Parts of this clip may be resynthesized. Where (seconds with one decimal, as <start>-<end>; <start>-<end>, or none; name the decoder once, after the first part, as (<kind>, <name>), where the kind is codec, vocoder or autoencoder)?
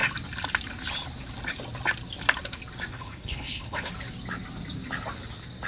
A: 2.9-3.9 (codec, HILCodec)